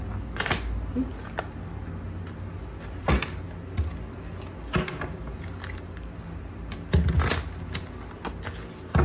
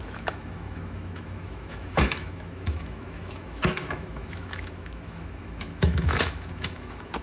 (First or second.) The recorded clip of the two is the first